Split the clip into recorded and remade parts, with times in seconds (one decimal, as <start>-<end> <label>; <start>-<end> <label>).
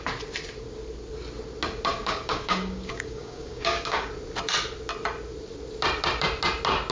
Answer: 0.0-1.9 recorded; 1.9-4.1 remade; 4.1-6.9 recorded